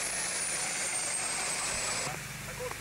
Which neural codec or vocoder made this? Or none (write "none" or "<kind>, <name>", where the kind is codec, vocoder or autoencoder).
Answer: vocoder, BigVGAN v2